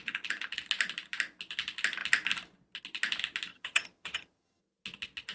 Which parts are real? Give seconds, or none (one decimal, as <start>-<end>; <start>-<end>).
0.0-3.5; 4.6-5.3